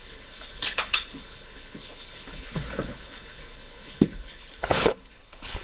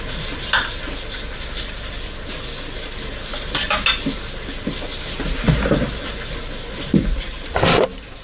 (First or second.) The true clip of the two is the second